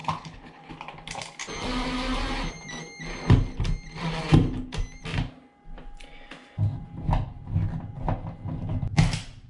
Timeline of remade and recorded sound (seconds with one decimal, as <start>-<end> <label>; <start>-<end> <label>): 0.0-0.7 remade; 0.7-9.5 recorded